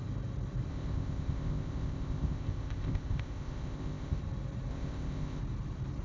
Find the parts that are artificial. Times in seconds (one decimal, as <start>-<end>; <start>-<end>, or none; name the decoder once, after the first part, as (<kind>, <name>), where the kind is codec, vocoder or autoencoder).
0.7-4.2 (codec, ZipCodec); 4.7-5.4